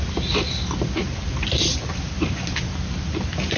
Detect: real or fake fake